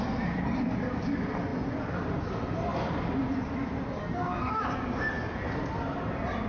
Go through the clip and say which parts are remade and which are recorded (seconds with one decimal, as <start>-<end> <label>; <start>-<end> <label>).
0.0-4.0 recorded; 4.0-4.6 remade; 4.6-6.5 recorded